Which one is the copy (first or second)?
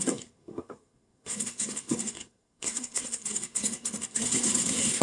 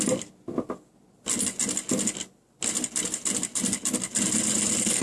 first